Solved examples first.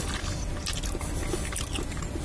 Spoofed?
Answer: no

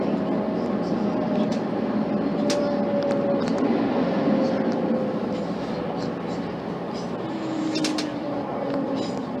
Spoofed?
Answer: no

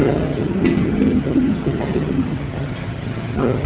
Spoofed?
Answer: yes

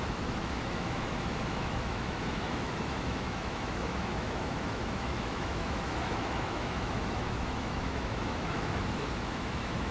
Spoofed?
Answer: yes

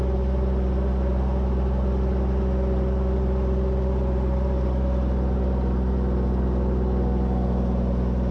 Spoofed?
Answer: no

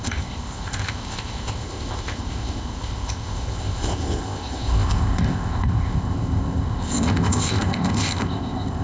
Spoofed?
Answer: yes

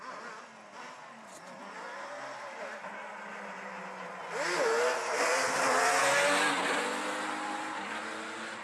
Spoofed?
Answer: no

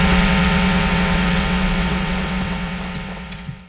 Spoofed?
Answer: yes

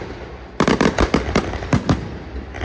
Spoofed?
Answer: no